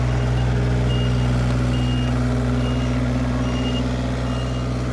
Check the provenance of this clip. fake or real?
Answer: real